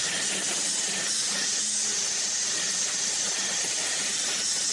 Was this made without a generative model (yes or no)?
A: yes